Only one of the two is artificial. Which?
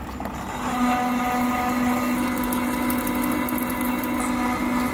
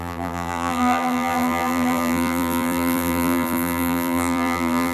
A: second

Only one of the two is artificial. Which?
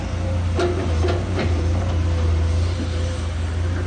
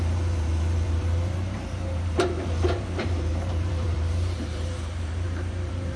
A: second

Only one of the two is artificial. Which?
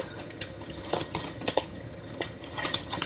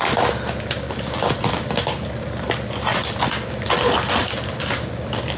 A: first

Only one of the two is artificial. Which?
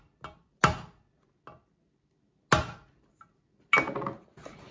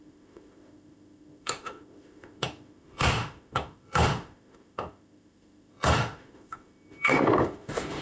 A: second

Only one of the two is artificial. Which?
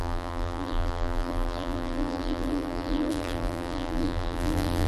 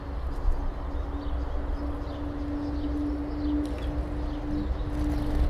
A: first